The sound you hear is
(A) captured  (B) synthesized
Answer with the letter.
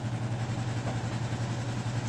A